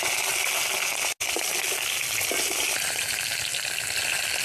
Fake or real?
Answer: real